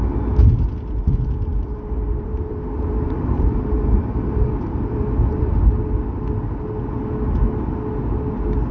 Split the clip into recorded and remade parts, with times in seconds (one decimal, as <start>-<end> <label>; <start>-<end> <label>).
0.0-1.5 recorded; 1.5-5.6 remade; 5.6-8.7 recorded